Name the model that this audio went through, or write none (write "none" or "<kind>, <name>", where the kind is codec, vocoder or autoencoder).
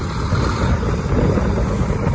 none